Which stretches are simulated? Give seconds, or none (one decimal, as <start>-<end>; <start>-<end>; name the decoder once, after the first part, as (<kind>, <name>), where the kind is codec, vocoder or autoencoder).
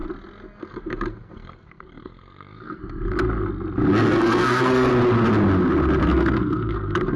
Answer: 0.6-2.8 (codec, SNAC); 3.9-4.9; 6.0-7.2